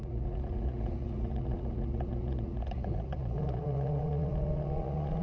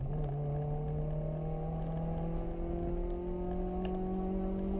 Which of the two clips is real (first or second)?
second